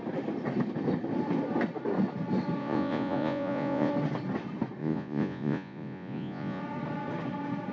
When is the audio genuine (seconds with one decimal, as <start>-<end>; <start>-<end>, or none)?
0.0-2.6; 3.9-4.8; 6.6-7.7